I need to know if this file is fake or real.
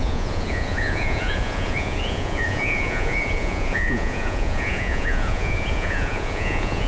fake